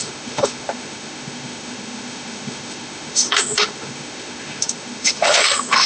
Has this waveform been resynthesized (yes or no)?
yes